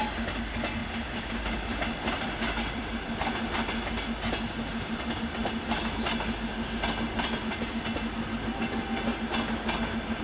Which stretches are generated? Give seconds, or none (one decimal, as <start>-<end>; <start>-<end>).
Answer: 0.8-3.4; 5.4-6.0; 6.5-7.8